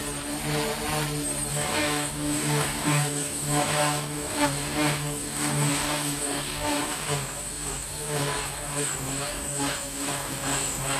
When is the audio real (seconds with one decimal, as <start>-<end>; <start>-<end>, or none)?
0.0-1.5